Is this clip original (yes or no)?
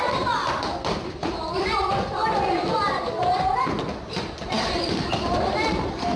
no